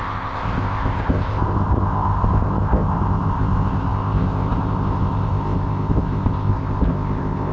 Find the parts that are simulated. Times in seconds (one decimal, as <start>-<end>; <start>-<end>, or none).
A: 0.0-7.5